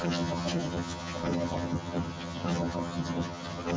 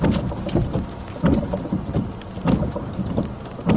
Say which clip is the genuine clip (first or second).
second